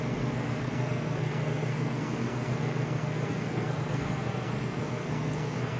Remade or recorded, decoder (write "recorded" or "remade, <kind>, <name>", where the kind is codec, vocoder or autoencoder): remade, codec, SNAC